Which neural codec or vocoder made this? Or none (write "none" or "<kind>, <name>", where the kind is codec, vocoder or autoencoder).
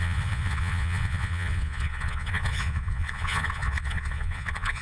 vocoder, Vocos